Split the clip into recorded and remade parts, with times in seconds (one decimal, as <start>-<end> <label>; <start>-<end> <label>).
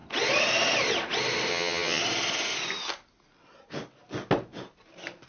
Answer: 0.0-1.5 recorded; 1.5-2.0 remade; 2.0-5.3 recorded